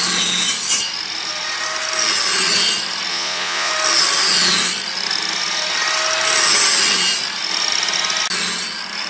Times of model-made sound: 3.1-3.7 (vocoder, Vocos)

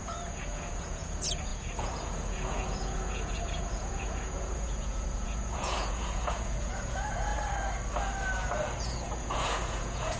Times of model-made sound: 0.0-7.3 (vocoder, Vocos); 8.8-10.2

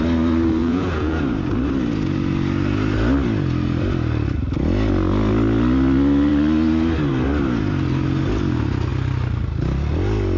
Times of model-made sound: 0.6-1.2 (vocoder, Vocos)

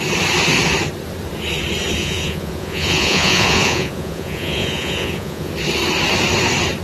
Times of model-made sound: 2.0-5.5 (vocoder, Vocos)